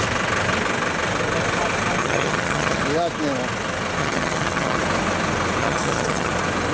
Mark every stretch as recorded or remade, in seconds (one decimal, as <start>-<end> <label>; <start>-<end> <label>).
0.0-2.0 recorded; 2.0-2.8 remade; 2.8-4.0 recorded; 4.0-4.8 remade; 4.8-5.6 recorded; 5.6-6.3 remade; 6.3-6.7 recorded